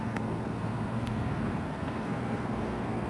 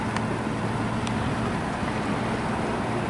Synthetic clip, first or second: first